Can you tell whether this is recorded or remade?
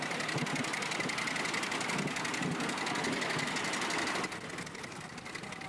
recorded